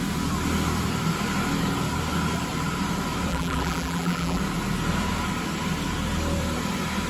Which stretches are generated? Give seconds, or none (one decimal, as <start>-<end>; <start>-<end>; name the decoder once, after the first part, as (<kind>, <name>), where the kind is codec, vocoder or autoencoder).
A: 3.3-4.4 (vocoder, BigVGAN v2)